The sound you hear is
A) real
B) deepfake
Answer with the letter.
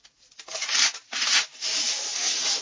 A